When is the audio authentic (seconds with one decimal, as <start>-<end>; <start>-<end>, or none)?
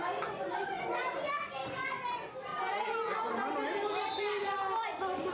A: 0.0-5.3